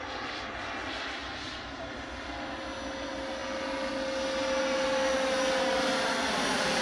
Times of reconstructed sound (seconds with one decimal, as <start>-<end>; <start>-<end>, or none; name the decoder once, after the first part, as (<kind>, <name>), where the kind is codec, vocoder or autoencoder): none